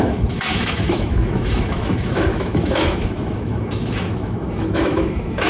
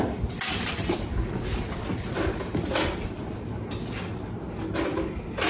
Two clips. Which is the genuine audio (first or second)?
second